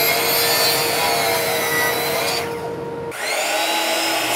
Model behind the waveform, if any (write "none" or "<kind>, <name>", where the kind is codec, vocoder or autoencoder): none